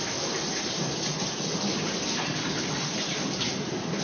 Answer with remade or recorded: recorded